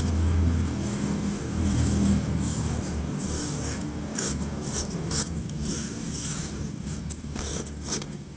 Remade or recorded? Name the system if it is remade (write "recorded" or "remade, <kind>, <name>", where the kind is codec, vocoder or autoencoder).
remade, codec, DAC